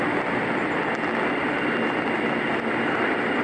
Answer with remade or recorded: recorded